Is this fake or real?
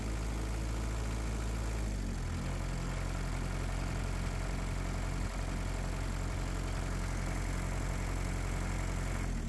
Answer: real